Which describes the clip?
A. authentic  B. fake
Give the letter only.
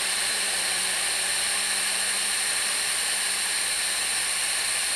A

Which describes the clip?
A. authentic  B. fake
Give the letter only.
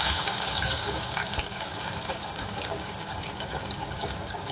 B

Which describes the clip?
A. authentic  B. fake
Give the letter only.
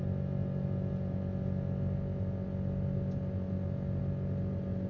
A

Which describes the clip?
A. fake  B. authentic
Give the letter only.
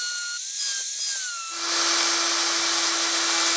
B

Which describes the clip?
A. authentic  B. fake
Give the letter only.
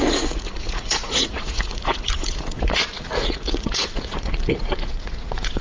B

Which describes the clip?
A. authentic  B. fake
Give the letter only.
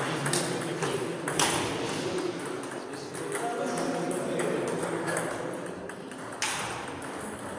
A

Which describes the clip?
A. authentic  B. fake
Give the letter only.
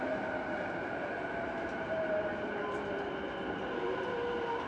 B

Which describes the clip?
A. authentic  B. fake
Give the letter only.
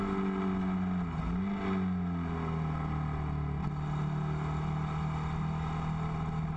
A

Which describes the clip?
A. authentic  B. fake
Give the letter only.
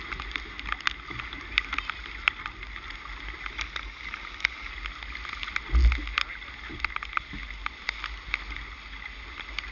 A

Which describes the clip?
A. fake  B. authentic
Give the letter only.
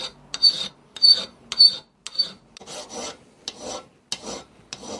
B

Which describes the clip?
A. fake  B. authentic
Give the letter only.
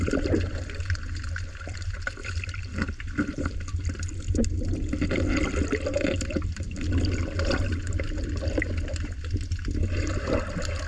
B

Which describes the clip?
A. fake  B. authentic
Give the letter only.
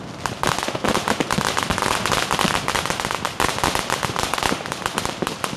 B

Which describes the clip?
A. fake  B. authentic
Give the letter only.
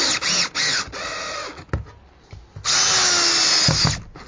B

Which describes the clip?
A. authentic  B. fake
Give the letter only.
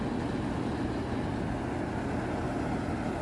A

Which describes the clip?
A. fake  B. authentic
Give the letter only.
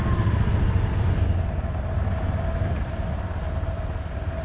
B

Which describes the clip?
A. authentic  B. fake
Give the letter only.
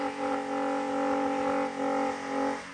A